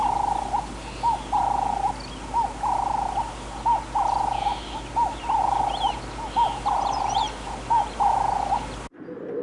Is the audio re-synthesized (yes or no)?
no